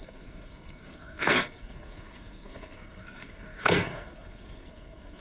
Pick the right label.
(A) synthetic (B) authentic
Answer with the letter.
A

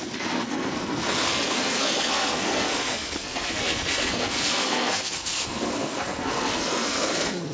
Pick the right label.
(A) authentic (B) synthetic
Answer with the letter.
B